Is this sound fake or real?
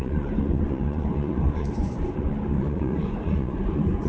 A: fake